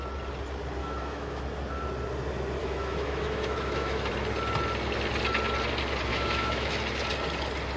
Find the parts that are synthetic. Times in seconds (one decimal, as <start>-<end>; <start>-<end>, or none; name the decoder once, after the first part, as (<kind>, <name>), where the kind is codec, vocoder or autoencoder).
0.8-1.4 (autoencoder, DAC-VAE); 2.6-4.1; 6.1-6.8